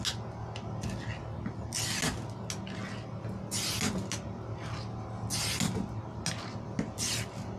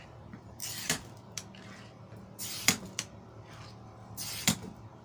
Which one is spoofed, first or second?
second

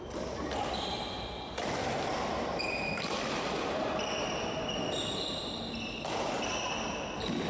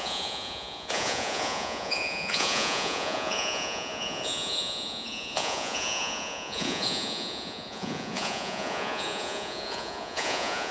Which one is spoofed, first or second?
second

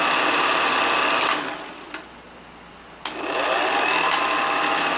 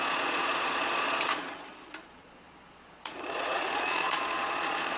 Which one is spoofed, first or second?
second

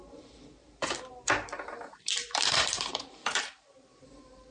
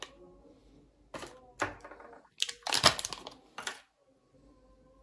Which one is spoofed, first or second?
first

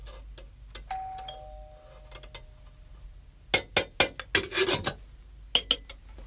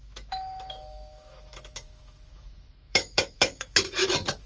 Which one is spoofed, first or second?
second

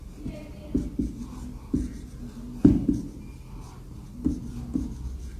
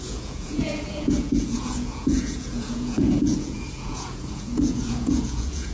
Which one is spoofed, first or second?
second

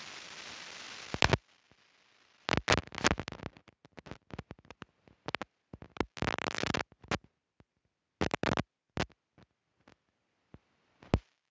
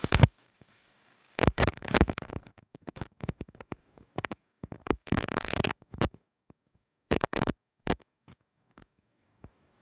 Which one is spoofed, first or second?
second